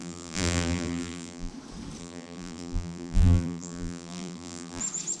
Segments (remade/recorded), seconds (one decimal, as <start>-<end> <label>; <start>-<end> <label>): 0.0-1.5 remade; 1.5-2.0 recorded; 2.0-4.8 remade; 4.8-5.2 recorded